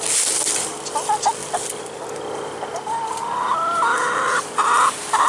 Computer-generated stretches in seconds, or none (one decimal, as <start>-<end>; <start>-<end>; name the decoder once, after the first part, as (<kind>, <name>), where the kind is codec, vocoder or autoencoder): none